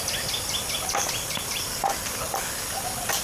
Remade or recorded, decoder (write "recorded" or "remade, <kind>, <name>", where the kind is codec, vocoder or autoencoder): recorded